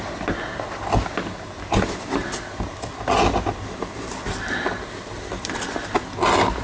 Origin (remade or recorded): recorded